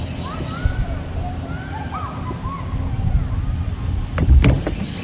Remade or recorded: recorded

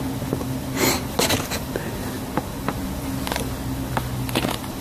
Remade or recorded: recorded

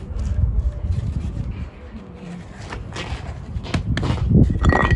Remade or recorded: recorded